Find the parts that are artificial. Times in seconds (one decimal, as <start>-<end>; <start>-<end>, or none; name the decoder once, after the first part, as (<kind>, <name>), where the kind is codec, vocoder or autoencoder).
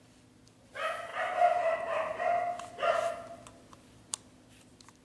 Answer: none